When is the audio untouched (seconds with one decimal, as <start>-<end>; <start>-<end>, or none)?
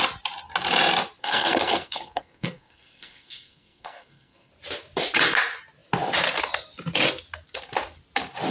0.0-1.2; 4.5-8.5